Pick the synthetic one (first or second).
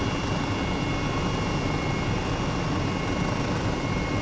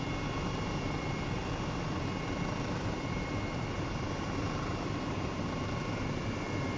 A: second